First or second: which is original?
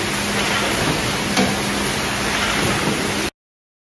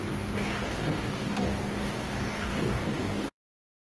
first